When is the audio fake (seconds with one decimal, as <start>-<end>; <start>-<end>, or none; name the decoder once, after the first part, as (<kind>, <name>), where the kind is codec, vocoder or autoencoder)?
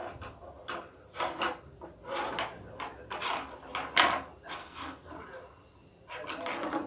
4.6-5.1 (codec, SNAC)